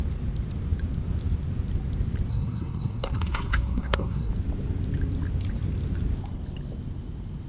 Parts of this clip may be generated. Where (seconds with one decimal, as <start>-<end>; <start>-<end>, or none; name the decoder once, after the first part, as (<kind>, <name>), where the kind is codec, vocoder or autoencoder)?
2.3-4.3 (codec, SNAC)